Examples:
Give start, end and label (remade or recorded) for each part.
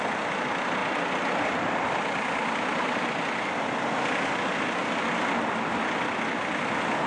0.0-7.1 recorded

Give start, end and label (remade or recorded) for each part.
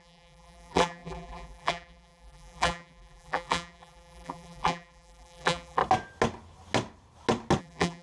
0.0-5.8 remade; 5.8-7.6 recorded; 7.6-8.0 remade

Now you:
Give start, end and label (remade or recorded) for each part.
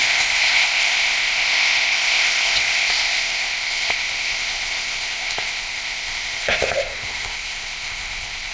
0.0-8.5 remade